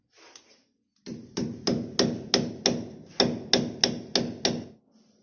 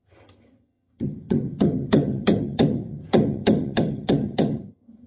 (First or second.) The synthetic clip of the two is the second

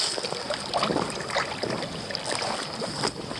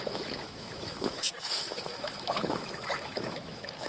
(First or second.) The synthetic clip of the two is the second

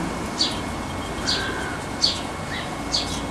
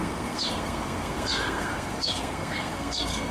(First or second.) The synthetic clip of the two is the second